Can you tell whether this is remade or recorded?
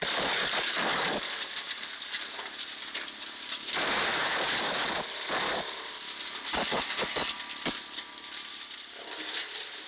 remade